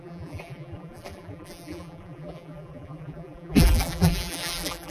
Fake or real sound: fake